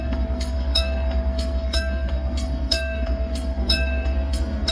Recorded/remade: remade